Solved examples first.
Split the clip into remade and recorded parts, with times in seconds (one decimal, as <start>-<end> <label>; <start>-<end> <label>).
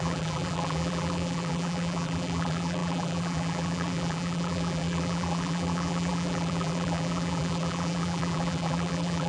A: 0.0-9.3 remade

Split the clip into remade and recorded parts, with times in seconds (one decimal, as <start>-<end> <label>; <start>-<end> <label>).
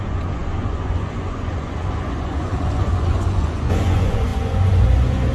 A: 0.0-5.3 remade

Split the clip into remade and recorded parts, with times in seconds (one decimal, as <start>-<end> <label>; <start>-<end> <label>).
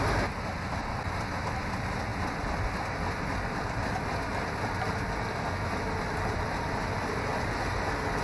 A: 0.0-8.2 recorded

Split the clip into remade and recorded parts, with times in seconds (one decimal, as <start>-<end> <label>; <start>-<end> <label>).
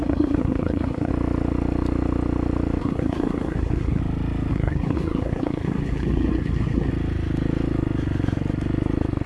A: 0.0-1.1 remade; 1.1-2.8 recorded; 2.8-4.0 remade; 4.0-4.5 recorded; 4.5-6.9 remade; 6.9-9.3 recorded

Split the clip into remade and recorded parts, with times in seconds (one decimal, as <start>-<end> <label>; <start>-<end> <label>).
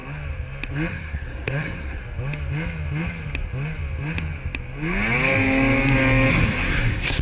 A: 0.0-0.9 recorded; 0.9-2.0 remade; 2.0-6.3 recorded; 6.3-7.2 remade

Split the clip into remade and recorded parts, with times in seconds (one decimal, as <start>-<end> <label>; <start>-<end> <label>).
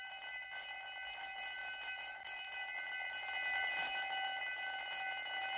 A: 0.0-5.6 recorded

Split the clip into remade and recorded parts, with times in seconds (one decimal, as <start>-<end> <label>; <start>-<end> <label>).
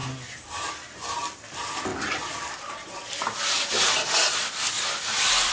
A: 0.0-5.5 recorded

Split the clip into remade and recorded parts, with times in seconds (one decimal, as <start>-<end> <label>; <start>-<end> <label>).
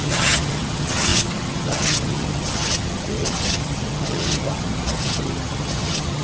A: 0.0-6.2 remade